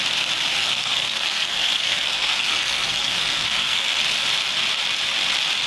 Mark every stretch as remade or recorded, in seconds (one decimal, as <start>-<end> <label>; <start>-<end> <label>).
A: 0.0-0.6 recorded; 0.6-4.0 remade; 4.0-5.7 recorded